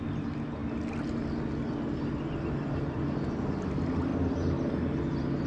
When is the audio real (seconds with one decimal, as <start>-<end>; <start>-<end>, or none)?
0.0-5.5